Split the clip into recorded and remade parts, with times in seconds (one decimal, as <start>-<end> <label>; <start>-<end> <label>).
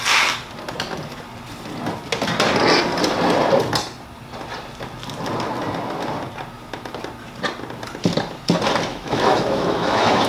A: 0.0-8.9 recorded; 8.9-10.3 remade